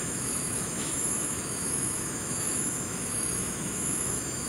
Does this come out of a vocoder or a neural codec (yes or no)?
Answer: yes